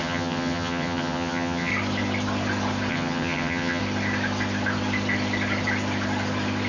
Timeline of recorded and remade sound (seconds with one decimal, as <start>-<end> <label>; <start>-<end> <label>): 0.0-1.7 remade; 1.7-2.9 recorded; 2.9-3.8 remade; 3.8-6.7 recorded